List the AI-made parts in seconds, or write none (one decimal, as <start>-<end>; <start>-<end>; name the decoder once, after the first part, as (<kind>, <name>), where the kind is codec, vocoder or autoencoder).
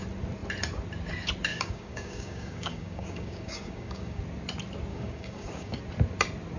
1.5-4.2 (codec, DAC); 4.9-5.8